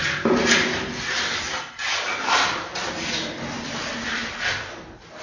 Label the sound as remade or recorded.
recorded